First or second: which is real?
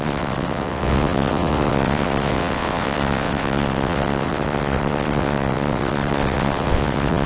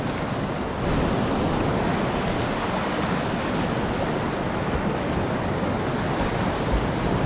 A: second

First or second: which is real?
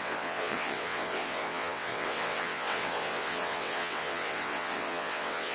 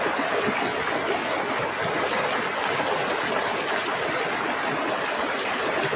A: second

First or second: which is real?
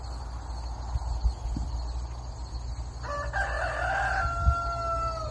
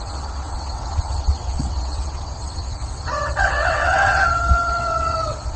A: first